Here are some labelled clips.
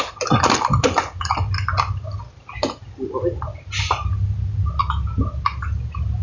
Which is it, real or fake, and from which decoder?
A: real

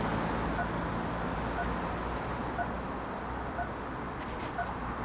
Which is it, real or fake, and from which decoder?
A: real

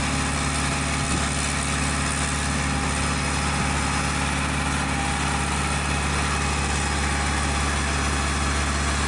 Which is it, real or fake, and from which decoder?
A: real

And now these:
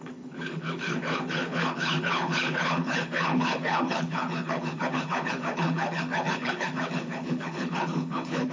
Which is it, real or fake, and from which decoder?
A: fake, codec, HILCodec